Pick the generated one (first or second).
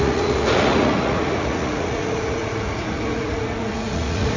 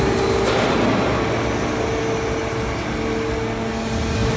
first